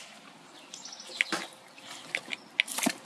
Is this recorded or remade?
recorded